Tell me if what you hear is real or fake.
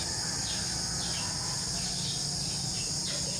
real